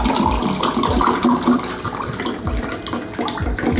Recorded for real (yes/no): yes